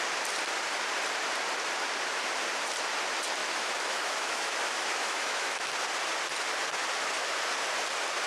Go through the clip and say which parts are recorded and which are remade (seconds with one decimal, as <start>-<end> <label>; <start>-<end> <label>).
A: 0.0-3.4 recorded; 3.4-5.7 remade; 5.7-8.3 recorded